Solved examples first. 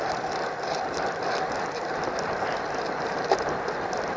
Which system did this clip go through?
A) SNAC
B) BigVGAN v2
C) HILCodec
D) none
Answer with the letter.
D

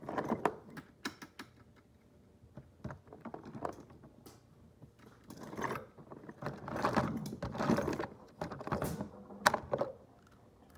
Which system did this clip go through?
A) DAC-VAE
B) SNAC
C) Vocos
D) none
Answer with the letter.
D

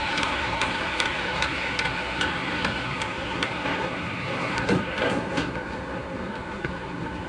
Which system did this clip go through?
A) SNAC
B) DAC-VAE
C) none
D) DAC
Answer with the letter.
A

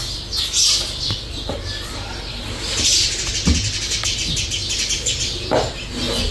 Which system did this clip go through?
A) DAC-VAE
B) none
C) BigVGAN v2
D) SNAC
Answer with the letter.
B